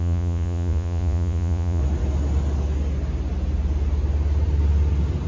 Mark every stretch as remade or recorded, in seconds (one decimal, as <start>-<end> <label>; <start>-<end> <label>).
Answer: 0.0-1.8 remade; 1.8-5.3 recorded